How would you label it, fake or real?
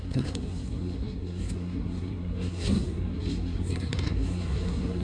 fake